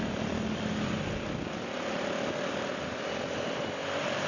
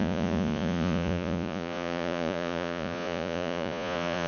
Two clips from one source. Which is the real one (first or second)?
first